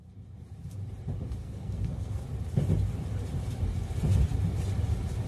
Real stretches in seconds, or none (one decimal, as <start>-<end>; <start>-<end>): 0.0-1.4; 2.2-5.3